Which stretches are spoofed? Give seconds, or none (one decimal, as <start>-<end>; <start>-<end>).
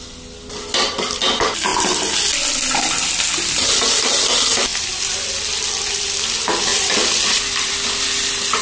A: 4.7-5.3; 6.7-7.7